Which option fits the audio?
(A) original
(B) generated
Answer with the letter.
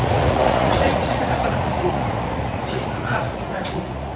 B